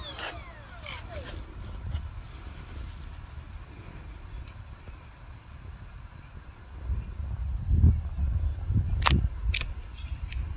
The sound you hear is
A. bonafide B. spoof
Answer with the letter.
A